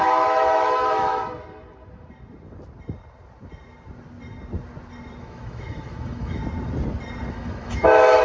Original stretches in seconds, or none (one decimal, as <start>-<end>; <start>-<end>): 1.2-5.2; 6.4-7.3